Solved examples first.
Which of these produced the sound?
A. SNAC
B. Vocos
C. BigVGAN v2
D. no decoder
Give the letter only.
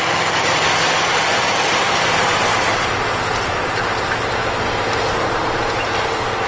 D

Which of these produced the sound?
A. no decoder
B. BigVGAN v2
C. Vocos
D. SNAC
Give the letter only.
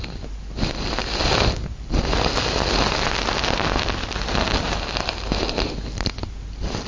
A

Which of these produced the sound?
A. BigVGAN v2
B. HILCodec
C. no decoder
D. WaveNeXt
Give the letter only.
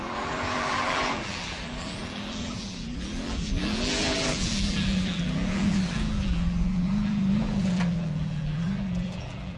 A